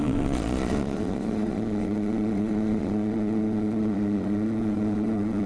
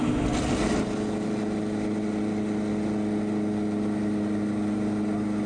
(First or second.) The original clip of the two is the second